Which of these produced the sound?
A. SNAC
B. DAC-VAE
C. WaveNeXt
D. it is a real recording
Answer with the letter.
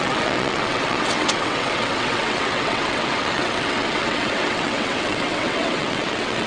C